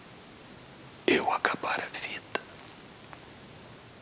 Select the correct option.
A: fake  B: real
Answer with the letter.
B